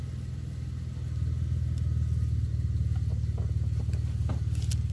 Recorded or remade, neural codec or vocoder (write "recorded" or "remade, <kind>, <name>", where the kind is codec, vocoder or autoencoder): recorded